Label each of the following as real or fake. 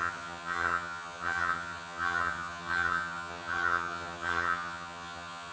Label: fake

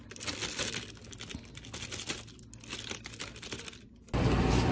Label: real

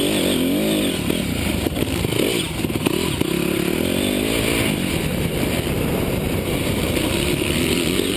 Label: real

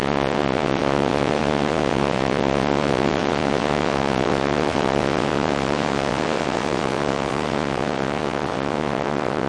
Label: fake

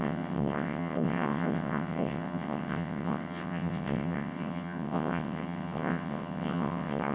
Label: fake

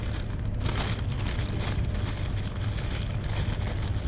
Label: real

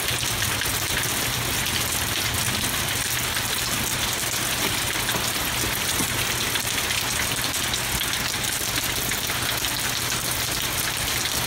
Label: real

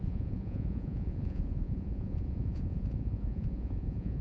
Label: fake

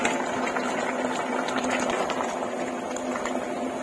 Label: real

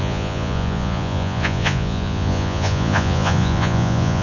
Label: fake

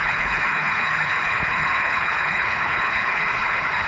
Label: fake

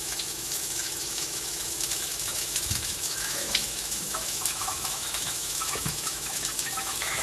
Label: fake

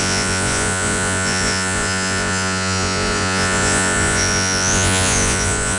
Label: fake